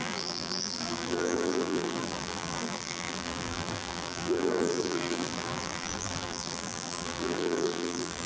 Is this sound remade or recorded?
remade